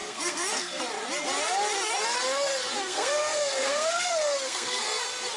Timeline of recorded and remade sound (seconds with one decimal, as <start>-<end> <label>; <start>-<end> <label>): 0.0-0.8 remade; 0.8-2.6 recorded; 2.6-5.0 remade; 5.0-5.4 recorded